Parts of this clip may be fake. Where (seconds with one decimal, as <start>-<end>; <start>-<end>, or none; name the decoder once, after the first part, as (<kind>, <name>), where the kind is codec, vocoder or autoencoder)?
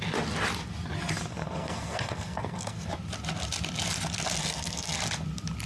1.3-2.9 (codec, SNAC); 4.4-5.0